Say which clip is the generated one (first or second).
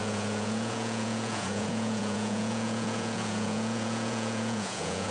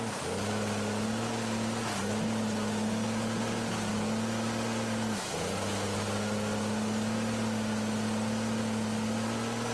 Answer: first